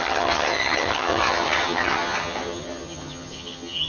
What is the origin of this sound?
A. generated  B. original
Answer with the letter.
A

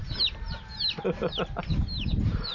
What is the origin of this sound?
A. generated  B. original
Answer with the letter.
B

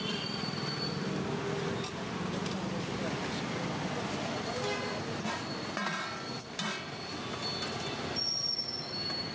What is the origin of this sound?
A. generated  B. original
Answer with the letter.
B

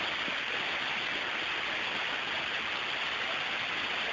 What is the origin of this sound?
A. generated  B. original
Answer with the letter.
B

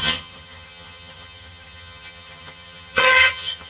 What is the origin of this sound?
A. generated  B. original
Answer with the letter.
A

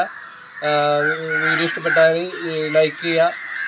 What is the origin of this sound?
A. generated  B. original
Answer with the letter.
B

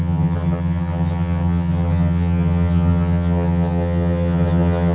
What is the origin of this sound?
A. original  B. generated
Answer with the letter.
B